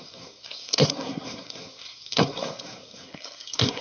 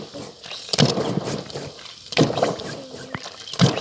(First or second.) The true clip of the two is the second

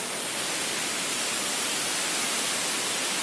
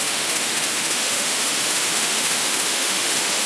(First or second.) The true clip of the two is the first